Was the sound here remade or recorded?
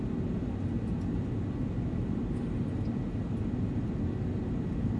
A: recorded